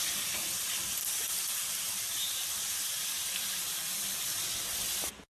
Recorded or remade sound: recorded